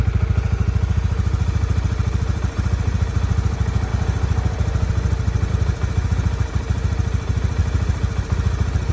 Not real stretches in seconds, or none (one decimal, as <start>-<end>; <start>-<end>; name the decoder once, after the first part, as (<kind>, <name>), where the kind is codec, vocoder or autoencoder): none